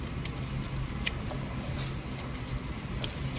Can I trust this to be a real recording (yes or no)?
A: yes